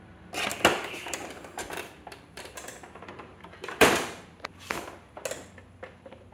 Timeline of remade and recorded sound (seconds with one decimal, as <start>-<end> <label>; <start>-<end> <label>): 0.0-0.7 recorded; 0.7-4.5 remade; 4.5-6.3 recorded